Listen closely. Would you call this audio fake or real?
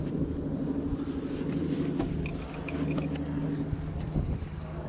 fake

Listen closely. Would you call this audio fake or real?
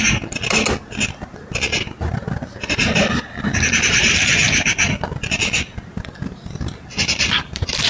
real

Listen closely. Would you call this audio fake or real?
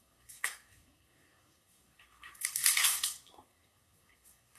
fake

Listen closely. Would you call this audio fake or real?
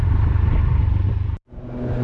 real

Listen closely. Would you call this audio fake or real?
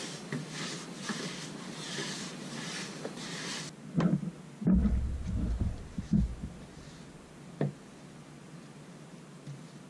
real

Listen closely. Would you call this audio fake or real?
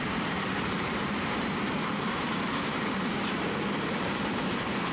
fake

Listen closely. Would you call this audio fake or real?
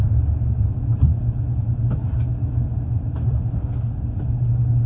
real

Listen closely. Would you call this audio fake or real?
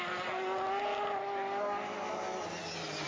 real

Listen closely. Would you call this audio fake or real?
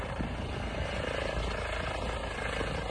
real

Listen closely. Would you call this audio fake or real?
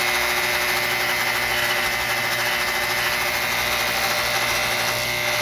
real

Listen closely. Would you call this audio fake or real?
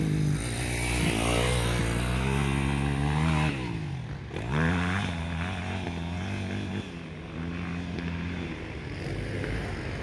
real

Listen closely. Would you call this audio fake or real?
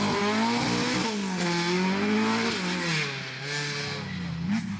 real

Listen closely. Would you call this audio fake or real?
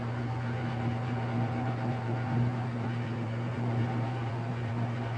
fake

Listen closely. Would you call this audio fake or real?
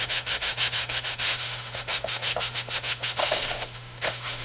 fake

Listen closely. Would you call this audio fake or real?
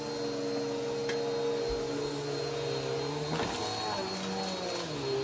real